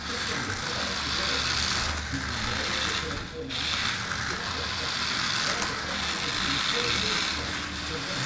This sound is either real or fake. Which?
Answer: real